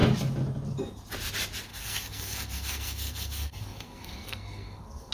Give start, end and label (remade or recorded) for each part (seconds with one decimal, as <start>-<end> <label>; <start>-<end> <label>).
0.0-1.7 recorded; 1.7-5.1 remade